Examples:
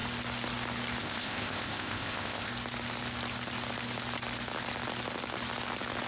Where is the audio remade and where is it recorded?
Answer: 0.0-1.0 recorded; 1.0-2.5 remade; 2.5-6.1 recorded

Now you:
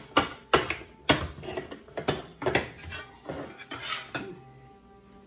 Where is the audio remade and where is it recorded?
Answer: 0.0-5.3 recorded

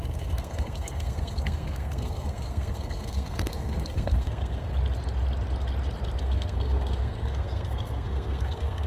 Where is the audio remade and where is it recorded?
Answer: 0.0-4.7 remade; 4.7-6.2 recorded; 6.2-8.9 remade